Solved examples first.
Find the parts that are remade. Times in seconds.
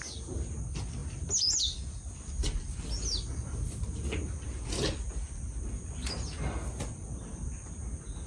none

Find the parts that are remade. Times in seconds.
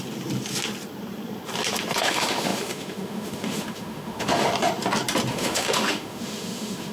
2.0-4.5 (autoencoder, DAC-VAE); 5.3-6.9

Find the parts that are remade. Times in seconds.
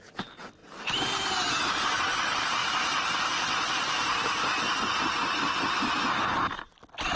none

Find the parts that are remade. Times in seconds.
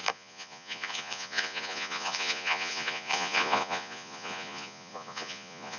0.0-5.8 (vocoder, Vocos)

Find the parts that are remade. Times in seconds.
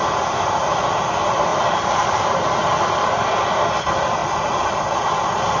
1.5-3.0 (vocoder, BigVGAN v2); 4.2-5.0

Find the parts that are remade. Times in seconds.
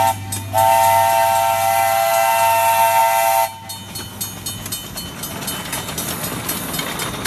none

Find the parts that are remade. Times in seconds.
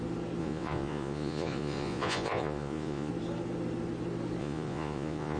0.4-3.1 (vocoder, Vocos); 4.4-5.4